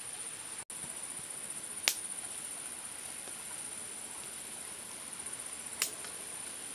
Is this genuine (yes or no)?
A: yes